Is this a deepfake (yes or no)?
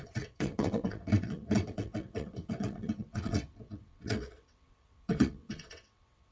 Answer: yes